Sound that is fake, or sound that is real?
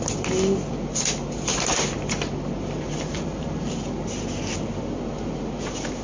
real